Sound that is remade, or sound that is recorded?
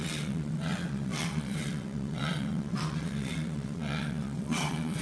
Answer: remade